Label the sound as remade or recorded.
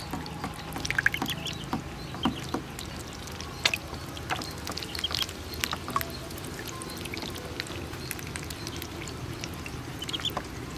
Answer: recorded